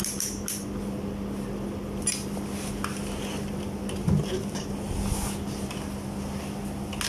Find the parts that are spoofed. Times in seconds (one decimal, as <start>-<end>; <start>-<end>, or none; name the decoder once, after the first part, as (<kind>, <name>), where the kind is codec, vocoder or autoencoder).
none